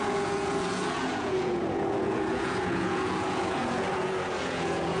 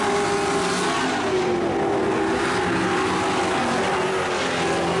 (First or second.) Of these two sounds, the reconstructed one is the first